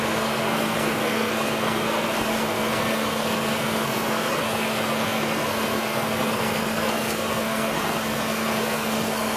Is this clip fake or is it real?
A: fake